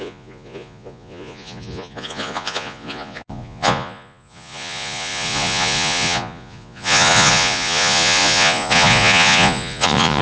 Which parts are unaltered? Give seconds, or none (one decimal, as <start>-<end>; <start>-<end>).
none